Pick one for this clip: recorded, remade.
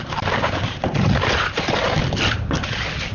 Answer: recorded